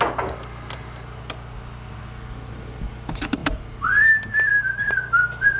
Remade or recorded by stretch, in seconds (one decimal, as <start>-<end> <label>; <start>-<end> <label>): 0.0-3.4 recorded; 3.4-5.6 remade